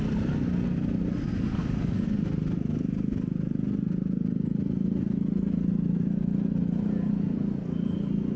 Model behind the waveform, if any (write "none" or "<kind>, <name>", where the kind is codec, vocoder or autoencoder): none